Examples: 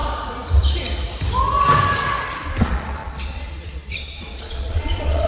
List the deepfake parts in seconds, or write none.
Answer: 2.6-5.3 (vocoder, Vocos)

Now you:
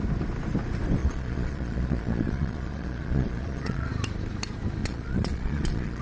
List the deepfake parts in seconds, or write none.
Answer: 1.0-3.9 (vocoder, Vocos); 4.8-6.0

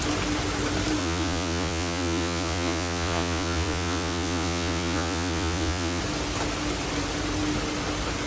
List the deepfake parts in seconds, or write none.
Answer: 1.0-6.0 (vocoder, Vocos)

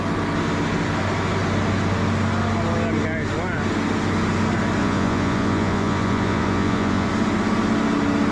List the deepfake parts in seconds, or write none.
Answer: 4.8-7.1 (vocoder, Vocos)

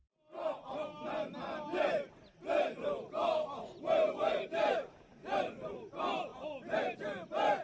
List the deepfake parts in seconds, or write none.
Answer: none